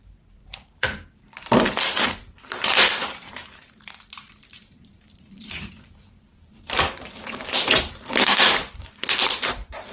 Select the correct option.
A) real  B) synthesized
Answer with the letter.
B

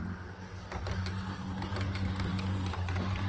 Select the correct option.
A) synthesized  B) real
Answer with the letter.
B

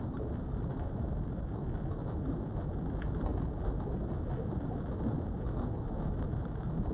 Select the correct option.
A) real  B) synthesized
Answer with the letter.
A